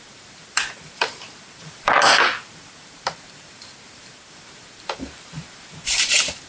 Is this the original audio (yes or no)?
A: no